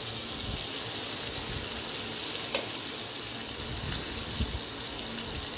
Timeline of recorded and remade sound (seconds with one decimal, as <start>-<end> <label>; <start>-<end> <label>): 0.0-5.6 recorded

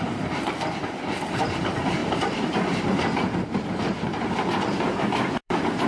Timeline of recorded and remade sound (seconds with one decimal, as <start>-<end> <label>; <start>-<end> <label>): 0.0-5.9 remade

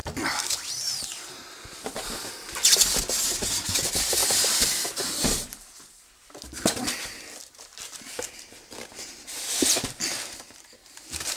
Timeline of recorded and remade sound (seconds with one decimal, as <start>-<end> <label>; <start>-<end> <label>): 0.0-0.7 recorded; 0.7-2.6 remade; 2.6-3.2 recorded; 3.2-11.4 remade

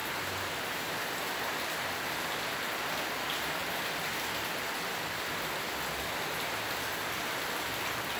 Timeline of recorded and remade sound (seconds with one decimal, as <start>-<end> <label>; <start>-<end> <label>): 0.0-0.8 remade; 0.8-8.2 recorded

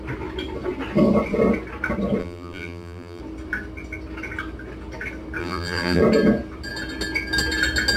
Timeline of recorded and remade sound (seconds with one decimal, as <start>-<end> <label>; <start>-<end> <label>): 0.0-2.2 recorded; 2.2-3.2 remade; 3.2-5.4 recorded; 5.4-6.0 remade; 6.0-8.0 recorded

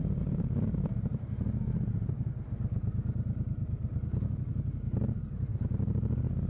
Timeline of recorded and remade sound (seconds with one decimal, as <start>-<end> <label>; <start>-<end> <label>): 0.0-1.1 remade; 1.1-5.0 recorded; 5.0-5.5 remade; 5.5-6.5 recorded

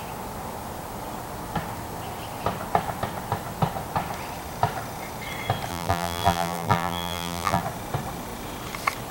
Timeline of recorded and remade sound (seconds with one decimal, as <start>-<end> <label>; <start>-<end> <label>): 0.0-5.7 recorded; 5.7-7.6 remade; 7.6-9.1 recorded